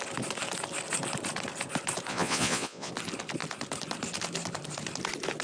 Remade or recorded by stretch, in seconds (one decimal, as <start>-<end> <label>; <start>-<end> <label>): 0.0-2.1 recorded; 2.1-2.9 remade; 2.9-5.4 recorded